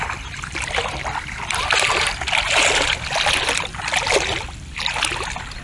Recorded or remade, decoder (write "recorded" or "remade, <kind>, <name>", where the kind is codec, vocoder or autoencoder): recorded